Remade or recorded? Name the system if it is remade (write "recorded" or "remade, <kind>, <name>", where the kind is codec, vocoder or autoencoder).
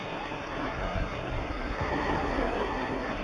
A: remade, codec, SNAC